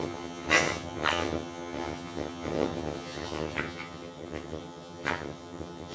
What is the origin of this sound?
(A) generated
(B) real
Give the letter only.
A